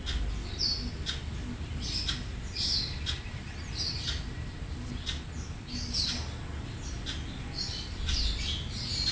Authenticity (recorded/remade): recorded